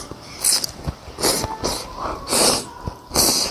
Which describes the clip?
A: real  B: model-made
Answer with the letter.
A